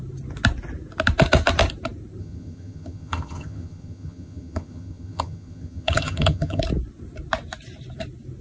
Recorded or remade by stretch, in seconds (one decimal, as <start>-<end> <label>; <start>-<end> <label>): 0.0-2.2 recorded; 2.2-6.6 remade; 6.6-8.4 recorded